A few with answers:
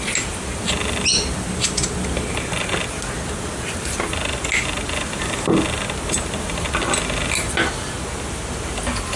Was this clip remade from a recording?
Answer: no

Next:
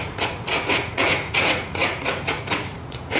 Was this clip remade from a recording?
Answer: yes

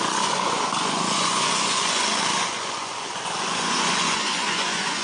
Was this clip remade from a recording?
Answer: yes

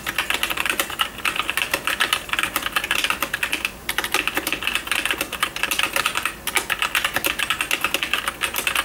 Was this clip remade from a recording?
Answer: no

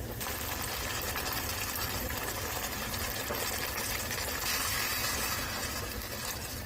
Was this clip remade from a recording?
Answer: no